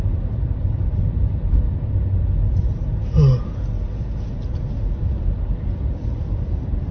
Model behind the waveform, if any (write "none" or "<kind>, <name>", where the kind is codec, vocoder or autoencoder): none